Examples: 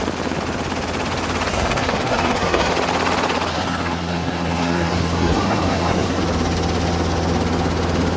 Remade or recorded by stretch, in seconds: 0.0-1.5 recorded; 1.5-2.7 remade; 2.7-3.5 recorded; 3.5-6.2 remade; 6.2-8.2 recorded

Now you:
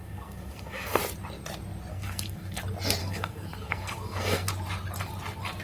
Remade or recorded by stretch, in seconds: 0.0-1.0 remade; 1.0-1.9 recorded; 1.9-2.6 remade; 2.6-3.0 recorded; 3.0-4.5 remade; 4.5-5.6 recorded

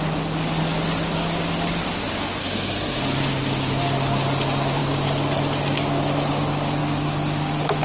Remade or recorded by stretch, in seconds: 0.0-2.4 recorded; 2.4-3.0 remade; 3.0-7.8 recorded

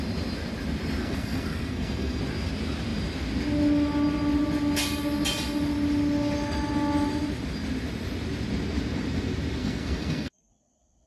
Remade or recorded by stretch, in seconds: 0.0-1.0 recorded; 1.0-2.2 remade; 2.2-9.6 recorded; 9.6-10.5 remade; 10.5-11.1 recorded

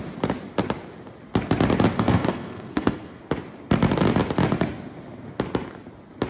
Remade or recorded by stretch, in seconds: 0.0-1.9 recorded; 1.9-3.2 remade; 3.2-6.3 recorded